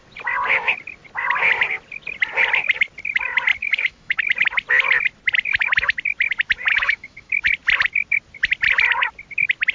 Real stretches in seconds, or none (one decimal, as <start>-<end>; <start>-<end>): 0.0-3.6; 4.2-6.7; 7.3-9.7